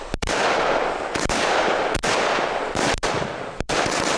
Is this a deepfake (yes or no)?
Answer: yes